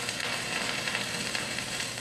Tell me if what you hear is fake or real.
fake